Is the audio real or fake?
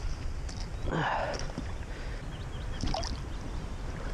real